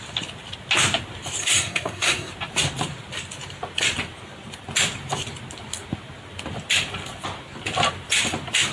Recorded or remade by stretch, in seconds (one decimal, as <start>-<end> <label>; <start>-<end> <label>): 0.0-1.4 recorded; 1.4-2.3 remade; 2.3-8.7 recorded